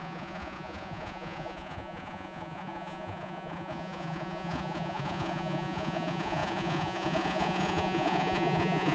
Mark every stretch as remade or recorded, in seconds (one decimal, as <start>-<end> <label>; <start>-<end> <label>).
0.0-8.9 remade